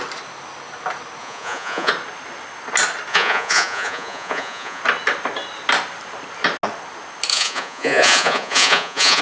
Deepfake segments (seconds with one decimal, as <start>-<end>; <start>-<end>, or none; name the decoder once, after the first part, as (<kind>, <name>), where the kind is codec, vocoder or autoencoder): 1.2-1.9 (vocoder, Vocos); 3.1-4.8; 7.3-9.2